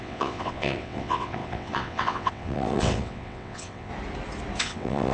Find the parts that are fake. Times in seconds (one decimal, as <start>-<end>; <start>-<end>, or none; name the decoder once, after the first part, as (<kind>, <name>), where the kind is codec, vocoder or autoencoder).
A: 0.0-3.9 (vocoder, WaveNeXt); 4.6-5.1